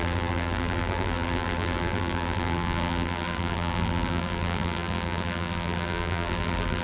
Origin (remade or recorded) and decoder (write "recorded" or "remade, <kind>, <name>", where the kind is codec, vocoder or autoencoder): remade, vocoder, BigVGAN v2